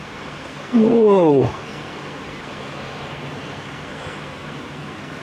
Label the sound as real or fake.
fake